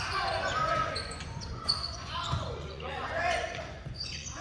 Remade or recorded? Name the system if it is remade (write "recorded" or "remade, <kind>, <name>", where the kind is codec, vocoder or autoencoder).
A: remade, vocoder, Vocos